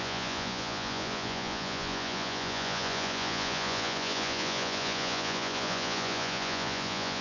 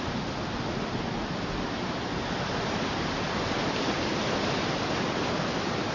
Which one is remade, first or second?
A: first